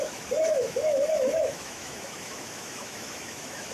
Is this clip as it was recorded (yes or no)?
no